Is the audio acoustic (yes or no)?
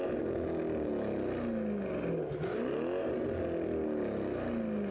yes